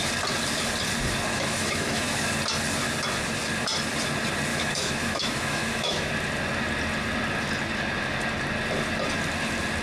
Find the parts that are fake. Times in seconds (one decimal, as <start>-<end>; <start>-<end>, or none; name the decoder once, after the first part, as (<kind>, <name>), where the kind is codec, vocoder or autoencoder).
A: 1.3-2.2 (autoencoder, DAC-VAE); 4.5-6.1